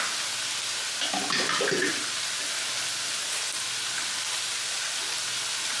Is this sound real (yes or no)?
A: yes